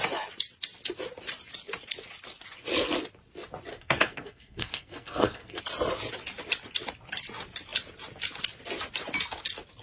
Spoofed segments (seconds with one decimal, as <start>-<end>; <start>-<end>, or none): 3.7-5.6